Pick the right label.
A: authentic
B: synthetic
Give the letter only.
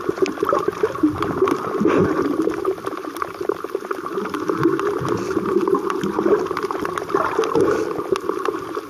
A